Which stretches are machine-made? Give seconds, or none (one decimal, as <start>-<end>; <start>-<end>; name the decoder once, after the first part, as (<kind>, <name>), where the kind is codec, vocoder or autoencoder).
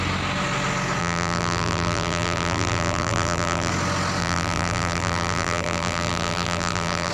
1.0-3.7 (vocoder, BigVGAN v2); 4.2-7.1